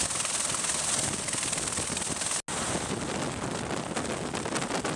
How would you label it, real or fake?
real